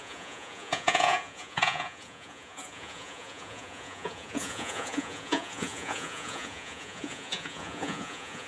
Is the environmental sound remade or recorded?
remade